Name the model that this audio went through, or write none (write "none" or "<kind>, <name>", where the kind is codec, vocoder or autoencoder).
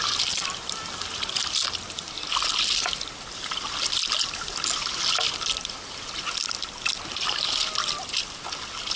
none